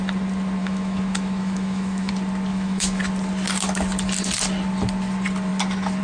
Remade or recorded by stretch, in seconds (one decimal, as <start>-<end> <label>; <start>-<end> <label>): 0.0-0.6 recorded; 0.6-2.1 remade; 2.1-2.5 recorded; 2.5-3.0 remade; 3.0-6.0 recorded